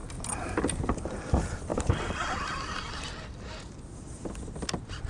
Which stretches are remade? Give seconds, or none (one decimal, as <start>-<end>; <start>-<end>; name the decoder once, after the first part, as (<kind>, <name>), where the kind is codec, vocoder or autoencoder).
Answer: none